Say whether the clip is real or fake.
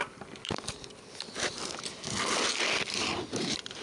fake